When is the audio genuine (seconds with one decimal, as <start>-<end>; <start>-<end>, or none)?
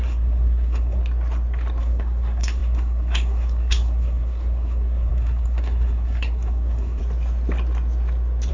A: 1.0-1.8; 7.0-8.5